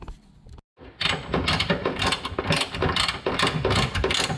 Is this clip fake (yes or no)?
no